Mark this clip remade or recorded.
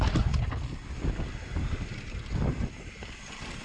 recorded